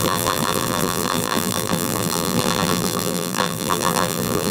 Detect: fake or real fake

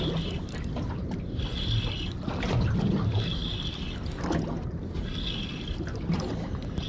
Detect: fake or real real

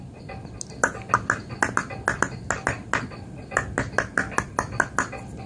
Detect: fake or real real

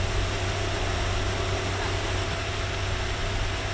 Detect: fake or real real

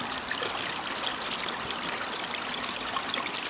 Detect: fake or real real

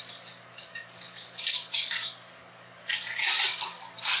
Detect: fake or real fake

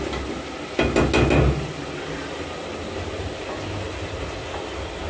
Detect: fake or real real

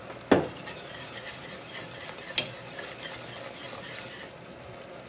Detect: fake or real real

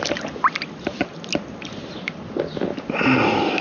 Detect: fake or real real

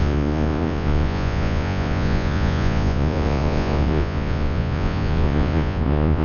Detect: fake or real fake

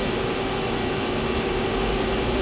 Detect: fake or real real